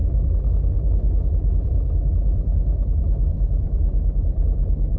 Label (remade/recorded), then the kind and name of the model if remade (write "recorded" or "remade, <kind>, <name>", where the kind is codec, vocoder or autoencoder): remade, vocoder, BigVGAN v2